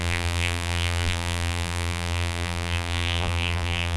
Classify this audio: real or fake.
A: fake